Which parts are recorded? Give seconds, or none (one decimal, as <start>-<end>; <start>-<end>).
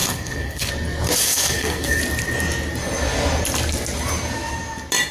0.7-1.2; 2.0-5.1